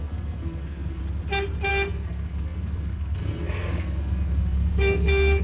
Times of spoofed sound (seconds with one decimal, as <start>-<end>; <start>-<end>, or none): 0.0-1.0; 1.7-5.4